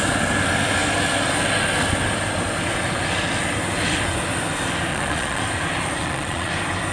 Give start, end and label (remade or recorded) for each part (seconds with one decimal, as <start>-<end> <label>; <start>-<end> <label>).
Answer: 0.0-4.9 recorded; 4.9-5.4 remade; 5.4-6.0 recorded; 6.0-6.5 remade; 6.5-6.9 recorded